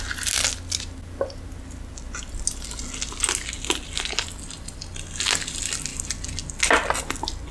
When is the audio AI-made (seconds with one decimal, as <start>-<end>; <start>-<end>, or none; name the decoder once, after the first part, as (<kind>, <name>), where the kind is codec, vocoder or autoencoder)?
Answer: none